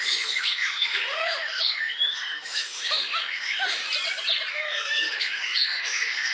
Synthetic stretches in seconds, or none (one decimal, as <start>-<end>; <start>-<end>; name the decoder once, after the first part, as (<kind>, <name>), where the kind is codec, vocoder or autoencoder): 0.0-3.8 (autoencoder, DAC-VAE); 4.5-6.3